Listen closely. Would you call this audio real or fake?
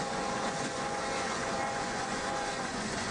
fake